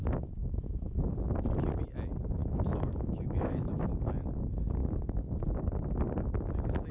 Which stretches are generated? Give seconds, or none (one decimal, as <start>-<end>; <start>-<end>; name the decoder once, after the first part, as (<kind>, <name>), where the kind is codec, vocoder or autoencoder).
0.0-1.1 (autoencoder, DAC-VAE); 2.4-3.9